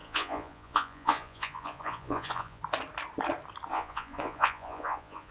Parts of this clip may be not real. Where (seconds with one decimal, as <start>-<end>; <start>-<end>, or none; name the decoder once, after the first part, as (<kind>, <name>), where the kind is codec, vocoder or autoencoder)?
0.0-2.6 (vocoder, Vocos); 3.7-5.3